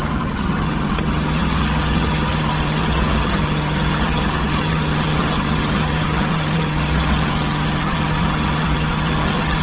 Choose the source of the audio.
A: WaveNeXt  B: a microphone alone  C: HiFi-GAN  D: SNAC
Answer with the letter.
C